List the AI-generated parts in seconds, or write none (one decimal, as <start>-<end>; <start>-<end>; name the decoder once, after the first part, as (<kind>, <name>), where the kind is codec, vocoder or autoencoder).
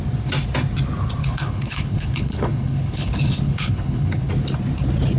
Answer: 1.2-4.3 (codec, HILCodec)